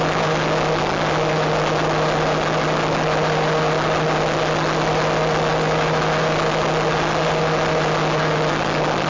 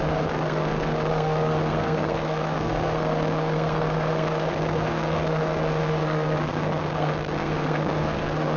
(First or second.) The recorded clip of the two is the first